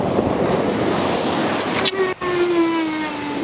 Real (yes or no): yes